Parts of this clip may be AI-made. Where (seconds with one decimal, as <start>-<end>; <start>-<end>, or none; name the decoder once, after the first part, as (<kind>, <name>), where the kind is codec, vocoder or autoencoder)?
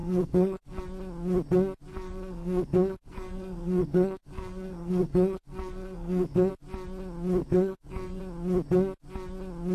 0.0-0.8 (codec, SNAC); 1.9-6.5; 7.4-8.2